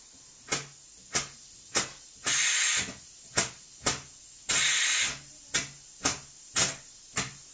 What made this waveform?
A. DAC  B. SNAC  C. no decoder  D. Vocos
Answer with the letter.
C